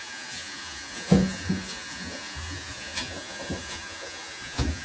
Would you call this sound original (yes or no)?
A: no